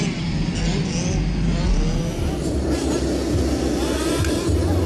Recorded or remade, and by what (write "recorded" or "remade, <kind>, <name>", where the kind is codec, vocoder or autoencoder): recorded